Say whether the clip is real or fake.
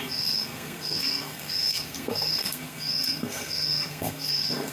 fake